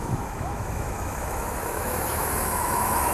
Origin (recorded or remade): remade